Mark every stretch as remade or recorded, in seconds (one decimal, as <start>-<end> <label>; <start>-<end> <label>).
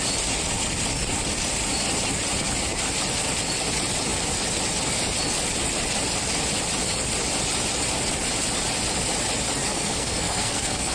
0.0-9.6 recorded; 9.6-10.9 remade